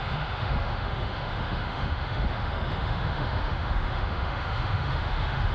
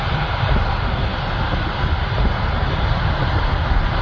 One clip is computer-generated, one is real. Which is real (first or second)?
second